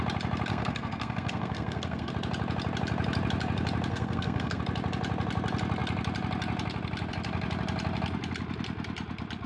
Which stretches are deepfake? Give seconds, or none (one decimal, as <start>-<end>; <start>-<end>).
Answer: 0.5-2.1; 3.9-4.6